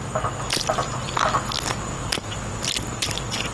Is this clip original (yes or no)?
yes